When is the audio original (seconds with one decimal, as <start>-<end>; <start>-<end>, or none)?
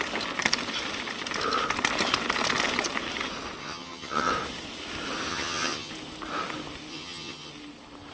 0.0-3.6; 4.3-5.3; 5.9-6.9; 7.5-8.1